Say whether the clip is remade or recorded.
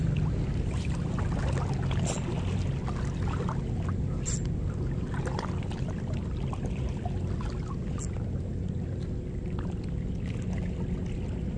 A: recorded